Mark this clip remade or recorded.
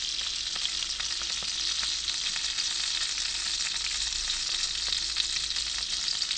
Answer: recorded